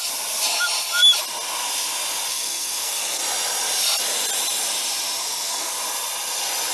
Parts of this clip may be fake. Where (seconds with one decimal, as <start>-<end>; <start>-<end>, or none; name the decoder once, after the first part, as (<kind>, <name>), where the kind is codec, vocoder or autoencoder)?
2.3-3.2 (codec, SNAC); 5.2-5.7